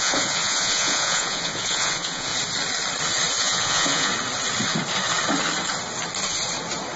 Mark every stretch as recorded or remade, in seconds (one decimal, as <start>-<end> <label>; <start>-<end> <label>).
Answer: 0.0-2.3 remade; 2.3-3.4 recorded; 3.4-4.1 remade; 4.1-7.0 recorded